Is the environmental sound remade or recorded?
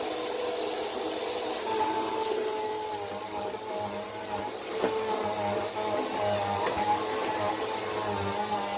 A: recorded